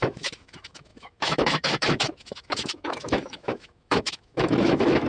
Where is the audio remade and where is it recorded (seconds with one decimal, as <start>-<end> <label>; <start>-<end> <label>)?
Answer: 0.0-5.1 remade